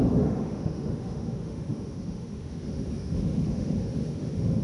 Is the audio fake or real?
fake